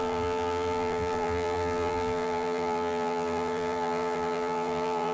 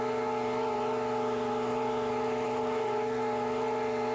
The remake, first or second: first